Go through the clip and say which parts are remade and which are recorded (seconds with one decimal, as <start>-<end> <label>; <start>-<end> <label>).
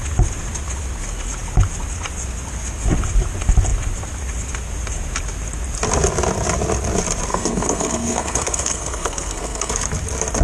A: 0.0-7.3 recorded; 7.3-9.7 remade; 9.7-10.4 recorded